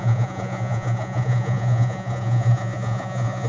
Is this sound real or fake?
fake